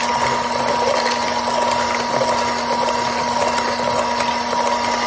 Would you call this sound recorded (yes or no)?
yes